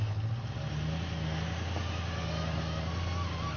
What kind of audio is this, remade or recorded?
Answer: recorded